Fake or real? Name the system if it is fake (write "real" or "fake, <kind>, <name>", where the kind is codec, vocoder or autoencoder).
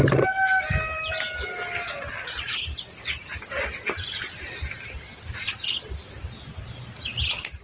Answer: real